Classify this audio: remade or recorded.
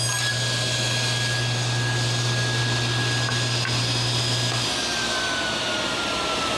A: recorded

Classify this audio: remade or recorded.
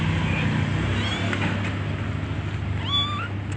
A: recorded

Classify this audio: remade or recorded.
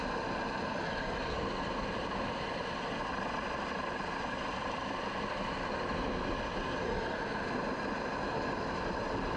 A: recorded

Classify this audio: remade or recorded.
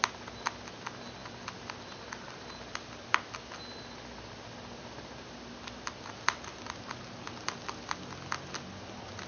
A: recorded